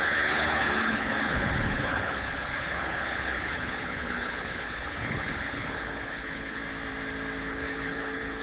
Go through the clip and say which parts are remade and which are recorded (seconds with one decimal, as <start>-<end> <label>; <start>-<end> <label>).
0.0-6.6 remade; 6.6-7.4 recorded; 7.4-8.4 remade